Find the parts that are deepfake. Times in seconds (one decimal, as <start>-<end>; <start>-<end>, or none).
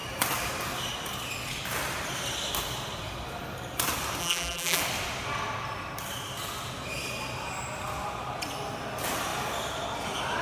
4.2-4.8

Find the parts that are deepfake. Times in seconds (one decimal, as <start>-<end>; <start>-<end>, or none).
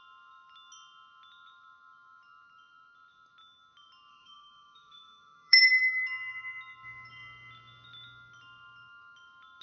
4.1-6.0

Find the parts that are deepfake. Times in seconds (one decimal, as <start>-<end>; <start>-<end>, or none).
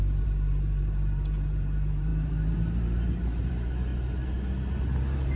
0.0-3.9; 5.0-5.4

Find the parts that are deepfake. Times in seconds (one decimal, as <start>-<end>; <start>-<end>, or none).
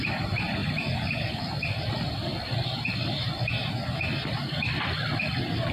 none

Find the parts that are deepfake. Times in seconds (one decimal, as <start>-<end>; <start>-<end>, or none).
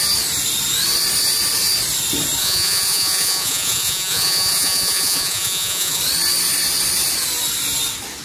2.4-6.0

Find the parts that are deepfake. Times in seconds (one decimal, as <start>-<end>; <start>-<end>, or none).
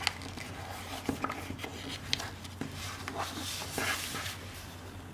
none